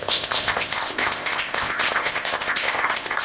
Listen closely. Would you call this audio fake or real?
fake